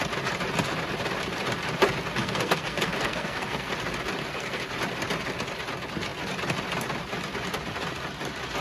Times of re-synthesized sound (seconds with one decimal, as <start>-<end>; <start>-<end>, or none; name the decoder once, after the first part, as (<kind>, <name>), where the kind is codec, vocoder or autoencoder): 2.2-3.7 (codec, SNAC); 4.2-4.7